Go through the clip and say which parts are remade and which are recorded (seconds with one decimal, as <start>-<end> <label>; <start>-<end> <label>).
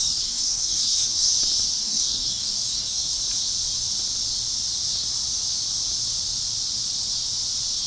0.0-1.3 remade; 1.3-1.8 recorded; 1.8-3.2 remade; 3.2-7.9 recorded